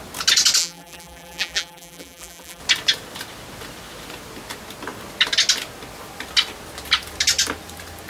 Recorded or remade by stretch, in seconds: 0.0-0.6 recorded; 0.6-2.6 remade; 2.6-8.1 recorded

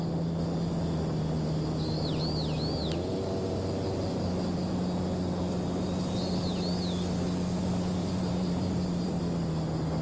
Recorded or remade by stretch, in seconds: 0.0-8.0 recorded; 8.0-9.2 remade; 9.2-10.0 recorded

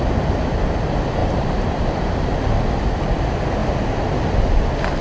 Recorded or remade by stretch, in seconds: 0.0-1.2 recorded; 1.2-2.4 remade; 2.4-5.0 recorded